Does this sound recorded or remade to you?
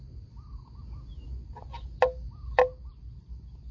recorded